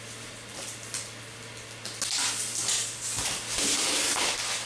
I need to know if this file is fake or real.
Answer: real